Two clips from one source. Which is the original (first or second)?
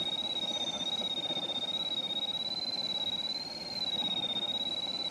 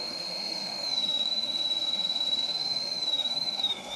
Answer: first